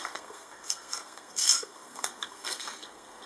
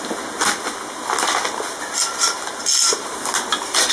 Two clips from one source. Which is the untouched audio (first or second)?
second